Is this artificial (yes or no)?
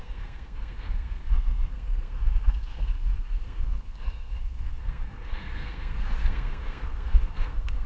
yes